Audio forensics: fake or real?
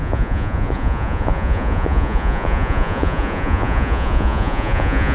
fake